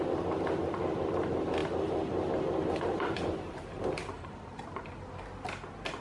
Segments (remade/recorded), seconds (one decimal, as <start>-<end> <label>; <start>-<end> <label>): 0.0-1.6 recorded; 1.6-4.8 remade; 4.8-6.0 recorded